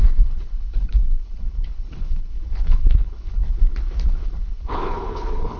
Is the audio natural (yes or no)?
no